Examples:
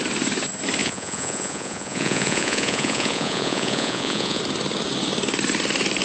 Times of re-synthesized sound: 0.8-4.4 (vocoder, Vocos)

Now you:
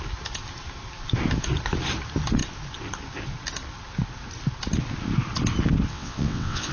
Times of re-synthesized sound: 5.9-6.7 (vocoder, WaveNeXt)

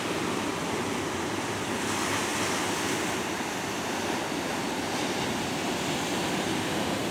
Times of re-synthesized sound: none

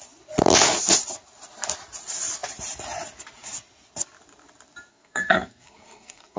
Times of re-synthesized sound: 4.9-6.4 (codec, SNAC)